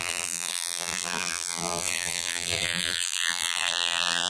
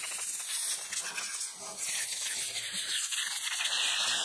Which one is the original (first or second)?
second